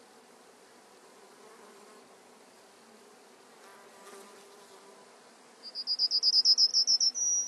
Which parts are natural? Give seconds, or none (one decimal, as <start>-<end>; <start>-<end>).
0.0-7.5